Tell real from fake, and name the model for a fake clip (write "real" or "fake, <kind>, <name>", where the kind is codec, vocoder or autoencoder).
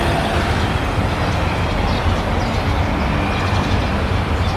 real